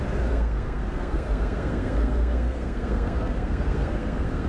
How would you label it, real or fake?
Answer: fake